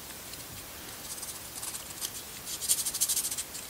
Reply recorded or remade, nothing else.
recorded